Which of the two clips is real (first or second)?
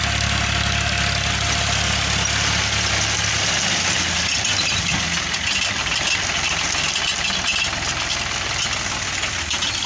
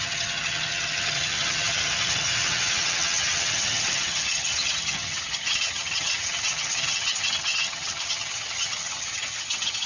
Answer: first